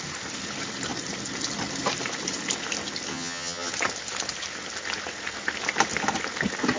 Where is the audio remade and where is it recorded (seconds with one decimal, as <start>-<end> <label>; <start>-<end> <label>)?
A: 0.0-3.1 recorded; 3.1-3.7 remade; 3.7-6.8 recorded